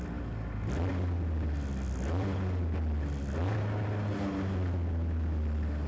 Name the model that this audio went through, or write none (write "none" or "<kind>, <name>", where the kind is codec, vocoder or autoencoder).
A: none